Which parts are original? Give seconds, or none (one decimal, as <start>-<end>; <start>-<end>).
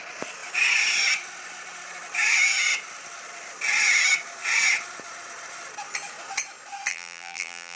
0.0-6.9